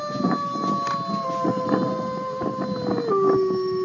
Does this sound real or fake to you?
real